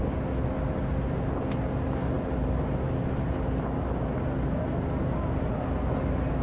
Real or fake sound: real